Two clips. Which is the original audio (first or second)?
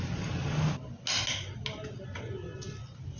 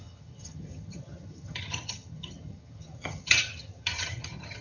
first